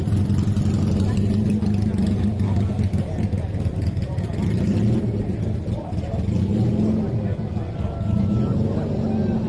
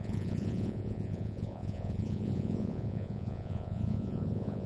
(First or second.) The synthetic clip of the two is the second